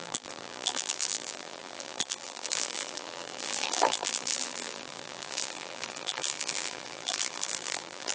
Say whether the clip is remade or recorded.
remade